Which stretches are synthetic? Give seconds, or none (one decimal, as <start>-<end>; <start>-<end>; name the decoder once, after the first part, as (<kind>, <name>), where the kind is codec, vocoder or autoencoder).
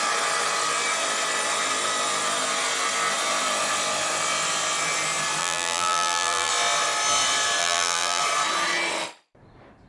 5.4-6.5 (vocoder, BigVGAN v2); 7.6-8.2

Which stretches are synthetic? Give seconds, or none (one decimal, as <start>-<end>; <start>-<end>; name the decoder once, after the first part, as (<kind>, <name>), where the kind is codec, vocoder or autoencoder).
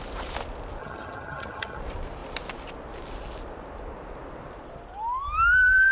0.8-1.8 (vocoder, HiFi-GAN)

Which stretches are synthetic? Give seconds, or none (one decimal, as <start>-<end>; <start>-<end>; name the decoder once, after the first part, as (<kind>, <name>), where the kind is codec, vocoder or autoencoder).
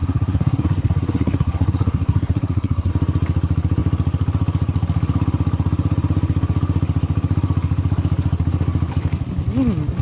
0.0-2.9 (codec, SNAC)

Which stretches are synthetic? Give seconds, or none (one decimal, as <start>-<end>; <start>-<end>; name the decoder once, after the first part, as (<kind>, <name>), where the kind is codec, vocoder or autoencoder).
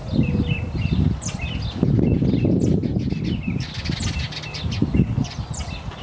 none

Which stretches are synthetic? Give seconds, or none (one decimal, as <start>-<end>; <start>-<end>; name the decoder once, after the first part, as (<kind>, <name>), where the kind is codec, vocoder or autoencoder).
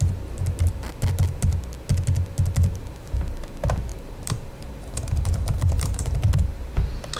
2.8-3.4 (vocoder, BigVGAN v2); 3.9-6.2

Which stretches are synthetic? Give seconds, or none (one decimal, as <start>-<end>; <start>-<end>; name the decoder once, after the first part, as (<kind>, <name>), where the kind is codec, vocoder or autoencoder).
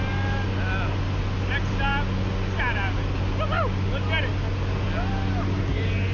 none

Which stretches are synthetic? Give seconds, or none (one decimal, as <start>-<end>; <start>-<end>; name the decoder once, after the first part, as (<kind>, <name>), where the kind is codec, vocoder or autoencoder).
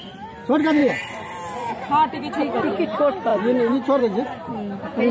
none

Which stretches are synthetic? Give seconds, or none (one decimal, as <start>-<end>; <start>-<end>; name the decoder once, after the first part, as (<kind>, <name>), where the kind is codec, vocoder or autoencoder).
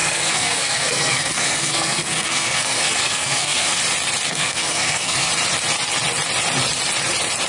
0.0-3.8 (codec, SNAC); 4.3-5.3